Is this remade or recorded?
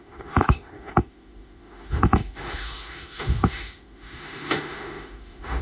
remade